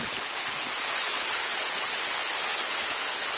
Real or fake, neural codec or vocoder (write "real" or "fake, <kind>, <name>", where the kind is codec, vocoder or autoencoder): fake, codec, HILCodec